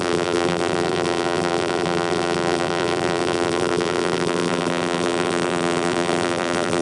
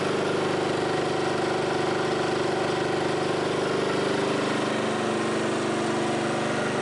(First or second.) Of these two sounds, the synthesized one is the first